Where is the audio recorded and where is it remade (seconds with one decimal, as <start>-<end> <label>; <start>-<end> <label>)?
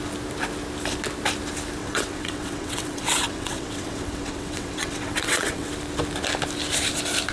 0.0-1.8 recorded; 1.8-5.7 remade; 5.7-7.3 recorded